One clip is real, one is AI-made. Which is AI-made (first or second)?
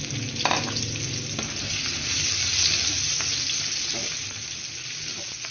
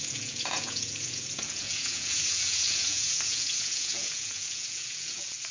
second